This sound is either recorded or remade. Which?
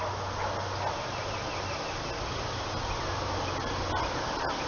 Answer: recorded